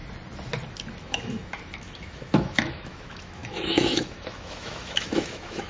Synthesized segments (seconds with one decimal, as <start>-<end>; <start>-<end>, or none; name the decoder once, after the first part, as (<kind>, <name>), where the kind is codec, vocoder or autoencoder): 1.0-5.7 (autoencoder, DAC-VAE)